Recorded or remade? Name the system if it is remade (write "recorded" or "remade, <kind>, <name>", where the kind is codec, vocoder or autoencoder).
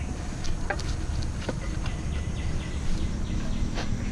recorded